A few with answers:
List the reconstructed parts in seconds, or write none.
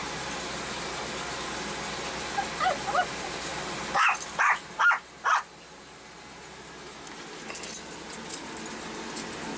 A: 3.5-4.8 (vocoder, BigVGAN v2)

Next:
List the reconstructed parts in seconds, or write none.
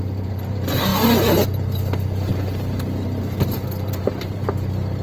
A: 0.0-0.9 (vocoder, BigVGAN v2); 3.9-5.0